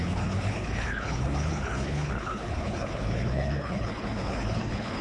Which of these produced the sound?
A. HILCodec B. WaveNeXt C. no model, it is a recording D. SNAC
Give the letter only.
A